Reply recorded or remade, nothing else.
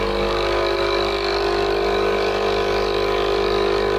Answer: remade